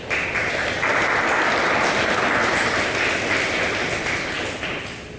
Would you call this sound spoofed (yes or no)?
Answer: no